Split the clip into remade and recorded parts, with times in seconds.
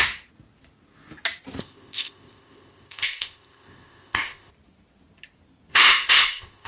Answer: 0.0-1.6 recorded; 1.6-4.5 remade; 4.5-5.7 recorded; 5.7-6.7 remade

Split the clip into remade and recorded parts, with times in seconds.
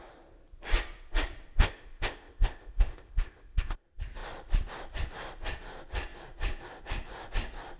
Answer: 0.0-1.6 recorded; 1.6-3.8 remade; 3.8-7.8 recorded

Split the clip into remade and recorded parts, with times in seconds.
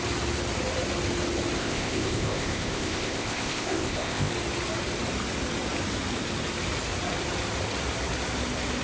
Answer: 0.0-1.6 recorded; 1.6-4.3 remade; 4.3-8.8 recorded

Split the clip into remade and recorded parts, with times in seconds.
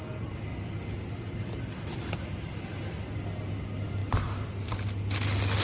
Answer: 0.0-5.6 recorded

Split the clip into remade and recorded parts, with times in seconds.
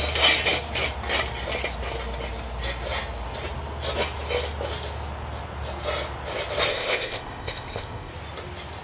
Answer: 0.0-6.7 recorded; 6.7-8.1 remade; 8.1-8.8 recorded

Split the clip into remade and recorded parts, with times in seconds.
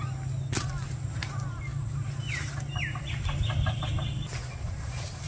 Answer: 0.0-5.3 recorded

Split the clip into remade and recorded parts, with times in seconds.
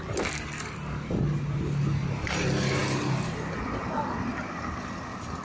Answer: 0.0-5.4 recorded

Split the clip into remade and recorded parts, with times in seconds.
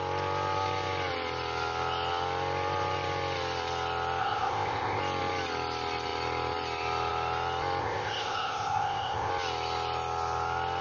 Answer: 0.0-4.2 recorded; 4.2-5.0 remade; 5.0-7.8 recorded; 7.8-9.3 remade; 9.3-10.8 recorded